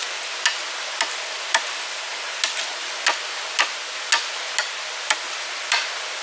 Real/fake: real